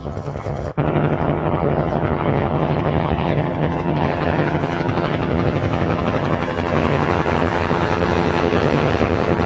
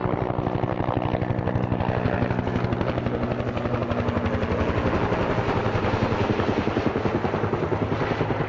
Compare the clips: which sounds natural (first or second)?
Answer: second